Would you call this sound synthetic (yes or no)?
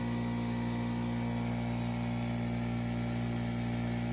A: no